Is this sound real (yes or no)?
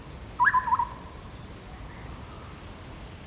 yes